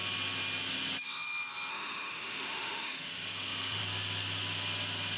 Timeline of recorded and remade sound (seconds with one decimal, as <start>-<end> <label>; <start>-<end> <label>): 0.0-1.7 recorded; 1.7-3.8 remade; 3.8-5.2 recorded